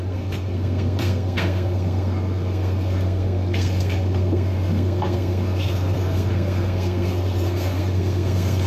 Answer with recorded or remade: remade